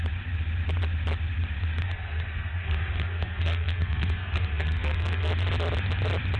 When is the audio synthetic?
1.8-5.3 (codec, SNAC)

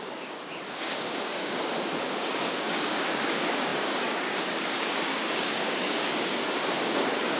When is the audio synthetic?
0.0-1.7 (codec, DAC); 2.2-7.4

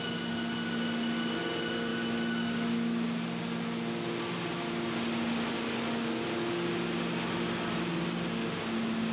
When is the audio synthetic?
none

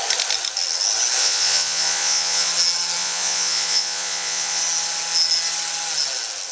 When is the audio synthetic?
1.2-2.5 (vocoder, Vocos); 3.0-4.6

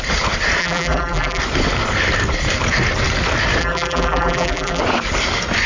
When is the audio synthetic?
0.6-1.4 (vocoder, BigVGAN v2); 3.6-4.8

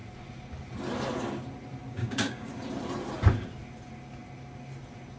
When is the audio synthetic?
1.9-2.5 (codec, DAC)

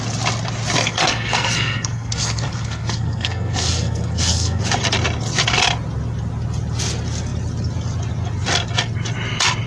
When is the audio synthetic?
0.8-4.6 (codec, SNAC)

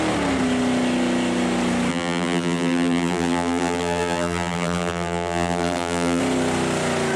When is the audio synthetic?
1.9-6.2 (vocoder, BigVGAN v2)